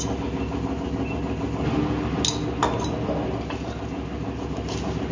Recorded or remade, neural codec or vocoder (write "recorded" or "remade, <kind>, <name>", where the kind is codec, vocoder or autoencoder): recorded